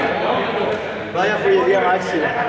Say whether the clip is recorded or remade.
recorded